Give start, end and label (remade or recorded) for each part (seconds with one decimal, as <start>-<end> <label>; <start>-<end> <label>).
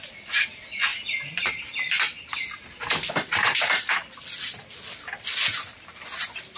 0.0-6.6 recorded